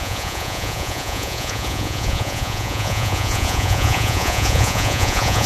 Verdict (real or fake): fake